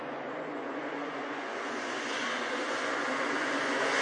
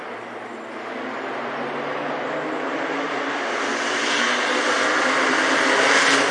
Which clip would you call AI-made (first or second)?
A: first